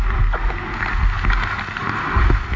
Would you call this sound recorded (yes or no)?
yes